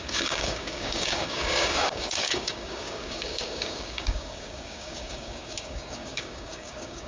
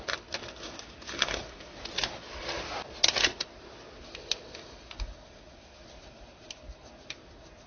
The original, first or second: second